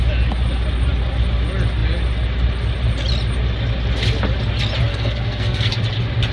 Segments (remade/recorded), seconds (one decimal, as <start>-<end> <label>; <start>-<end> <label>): 0.0-4.9 recorded; 4.9-5.7 remade; 5.7-6.3 recorded